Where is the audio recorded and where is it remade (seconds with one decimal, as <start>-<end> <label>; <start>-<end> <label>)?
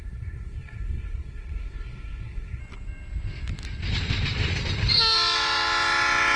0.0-2.6 remade; 2.6-6.4 recorded